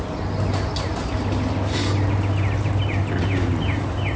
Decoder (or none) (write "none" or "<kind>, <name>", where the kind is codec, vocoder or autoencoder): none